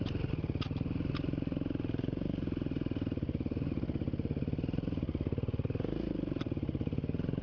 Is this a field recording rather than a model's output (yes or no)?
yes